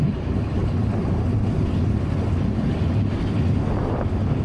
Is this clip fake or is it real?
real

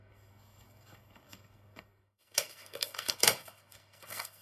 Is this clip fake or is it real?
fake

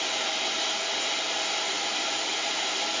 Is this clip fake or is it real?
real